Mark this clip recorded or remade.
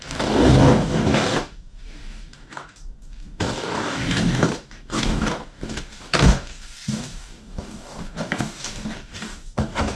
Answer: remade